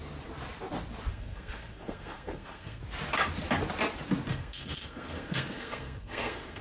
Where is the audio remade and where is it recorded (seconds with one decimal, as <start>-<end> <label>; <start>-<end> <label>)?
0.0-1.1 recorded; 1.1-2.8 remade; 2.8-4.3 recorded; 4.3-6.6 remade